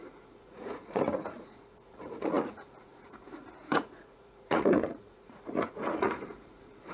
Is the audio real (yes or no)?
no